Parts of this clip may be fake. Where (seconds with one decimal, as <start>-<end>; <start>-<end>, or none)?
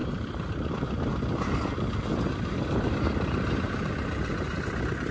none